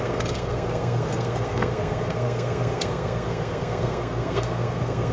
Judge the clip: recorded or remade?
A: remade